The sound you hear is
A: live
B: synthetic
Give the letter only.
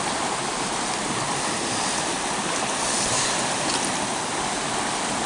A